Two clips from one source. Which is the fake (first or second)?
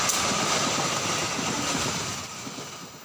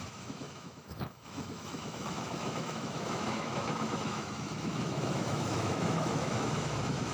second